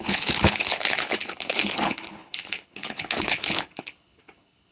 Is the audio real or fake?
fake